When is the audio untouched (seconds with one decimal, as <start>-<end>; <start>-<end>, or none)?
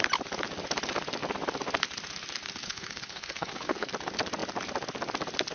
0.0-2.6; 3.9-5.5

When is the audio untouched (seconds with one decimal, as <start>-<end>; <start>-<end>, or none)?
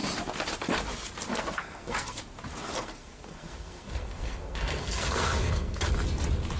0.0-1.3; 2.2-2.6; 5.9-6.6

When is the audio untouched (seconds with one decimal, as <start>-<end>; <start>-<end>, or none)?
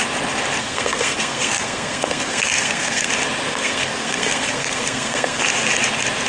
0.0-0.6; 3.1-3.5; 5.4-6.3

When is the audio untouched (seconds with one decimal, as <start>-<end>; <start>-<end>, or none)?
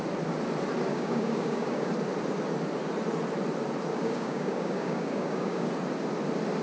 0.0-0.9; 1.9-3.9; 5.7-6.6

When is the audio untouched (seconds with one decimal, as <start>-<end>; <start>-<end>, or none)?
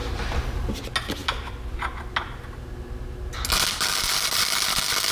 0.0-5.1